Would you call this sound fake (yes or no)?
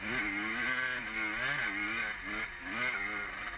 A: no